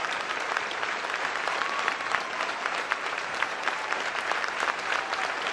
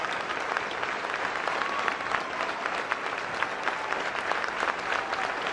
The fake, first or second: first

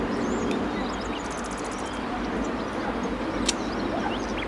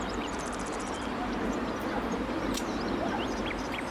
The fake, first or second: second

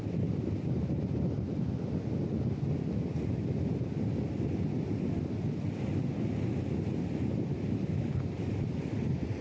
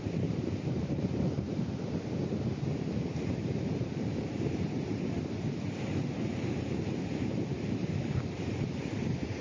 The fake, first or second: second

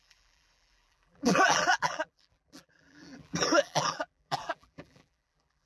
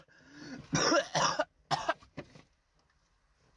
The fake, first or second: first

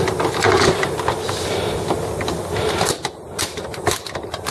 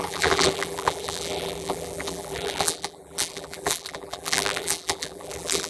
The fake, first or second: second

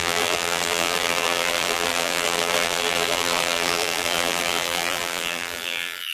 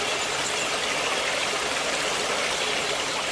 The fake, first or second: first